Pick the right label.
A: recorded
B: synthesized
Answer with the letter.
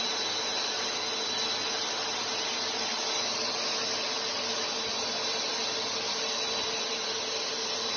A